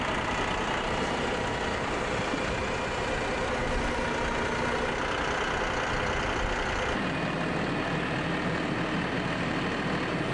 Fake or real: real